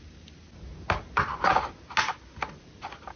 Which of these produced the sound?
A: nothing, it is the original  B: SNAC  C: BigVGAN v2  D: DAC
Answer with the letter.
A